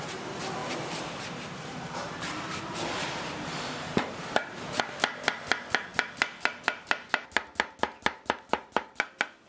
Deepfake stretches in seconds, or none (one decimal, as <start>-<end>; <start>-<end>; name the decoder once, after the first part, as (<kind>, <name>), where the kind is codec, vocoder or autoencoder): 0.6-4.8 (vocoder, BigVGAN v2)